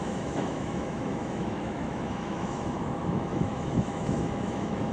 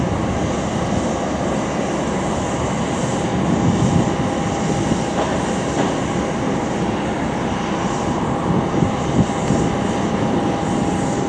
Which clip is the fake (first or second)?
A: first